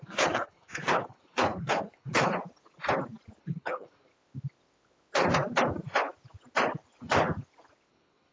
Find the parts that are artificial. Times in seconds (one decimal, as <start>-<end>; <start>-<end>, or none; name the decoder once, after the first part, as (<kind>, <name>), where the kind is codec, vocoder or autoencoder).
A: 0.0-2.3 (codec, HILCodec); 3.4-4.1; 7.9-8.3